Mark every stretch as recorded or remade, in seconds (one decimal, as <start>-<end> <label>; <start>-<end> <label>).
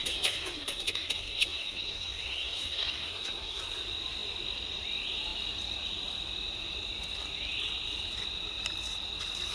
0.0-3.6 remade; 3.6-9.5 recorded